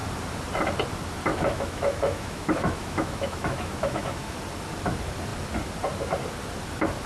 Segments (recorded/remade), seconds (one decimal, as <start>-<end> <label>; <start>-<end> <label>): 0.0-1.3 recorded; 1.3-4.4 remade; 4.4-7.1 recorded